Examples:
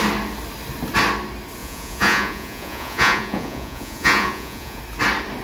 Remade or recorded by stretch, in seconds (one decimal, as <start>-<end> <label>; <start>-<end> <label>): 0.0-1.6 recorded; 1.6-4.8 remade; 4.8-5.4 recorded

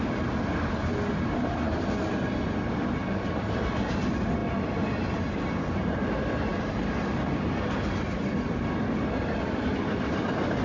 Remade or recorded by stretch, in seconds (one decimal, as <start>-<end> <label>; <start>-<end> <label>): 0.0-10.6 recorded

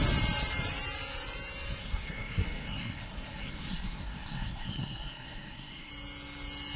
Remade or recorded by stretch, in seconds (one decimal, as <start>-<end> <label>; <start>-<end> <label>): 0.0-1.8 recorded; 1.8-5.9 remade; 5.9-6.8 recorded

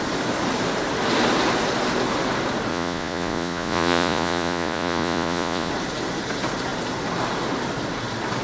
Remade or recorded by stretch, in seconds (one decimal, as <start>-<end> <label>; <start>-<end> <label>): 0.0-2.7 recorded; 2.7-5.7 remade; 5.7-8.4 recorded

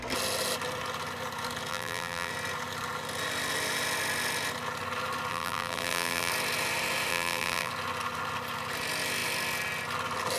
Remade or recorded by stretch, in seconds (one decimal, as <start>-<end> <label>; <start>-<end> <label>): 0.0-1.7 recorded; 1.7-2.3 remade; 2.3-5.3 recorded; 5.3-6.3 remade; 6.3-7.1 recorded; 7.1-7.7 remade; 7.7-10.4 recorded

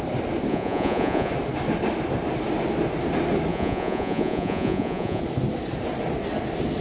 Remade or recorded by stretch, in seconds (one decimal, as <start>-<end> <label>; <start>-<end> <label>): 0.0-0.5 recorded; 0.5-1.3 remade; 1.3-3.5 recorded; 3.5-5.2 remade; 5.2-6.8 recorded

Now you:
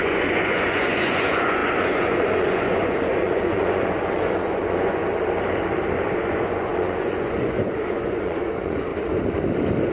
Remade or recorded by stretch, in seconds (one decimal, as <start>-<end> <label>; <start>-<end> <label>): 0.0-5.0 remade; 5.0-6.2 recorded; 6.2-8.9 remade; 8.9-9.9 recorded

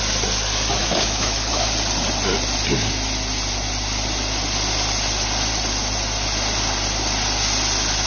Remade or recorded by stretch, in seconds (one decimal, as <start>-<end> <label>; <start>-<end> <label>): 0.0-0.8 recorded; 0.8-1.5 remade; 1.5-8.1 recorded